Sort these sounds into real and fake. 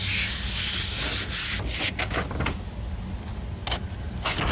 real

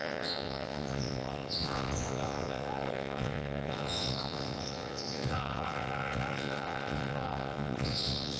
fake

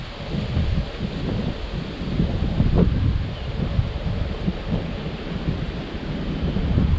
real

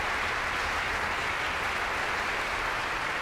real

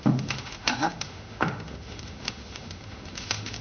fake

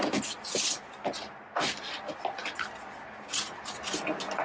real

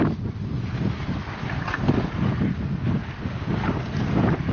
real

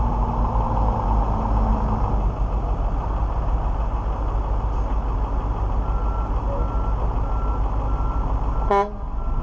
real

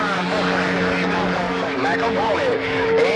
fake